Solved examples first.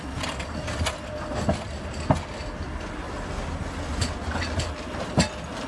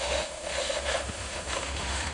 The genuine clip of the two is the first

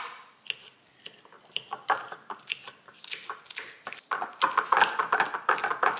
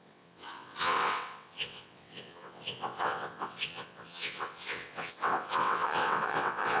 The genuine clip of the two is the first